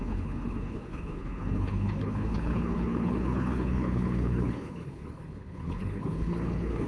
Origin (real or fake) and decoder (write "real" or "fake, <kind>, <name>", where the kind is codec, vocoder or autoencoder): fake, codec, HILCodec